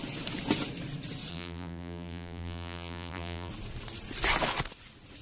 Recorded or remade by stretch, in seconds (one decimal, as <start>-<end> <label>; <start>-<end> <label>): 0.0-1.3 recorded; 1.3-3.5 remade; 3.5-5.2 recorded